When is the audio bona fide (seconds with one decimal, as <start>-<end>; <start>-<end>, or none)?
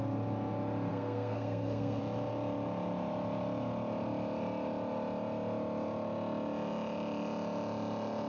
0.0-0.9; 2.0-8.3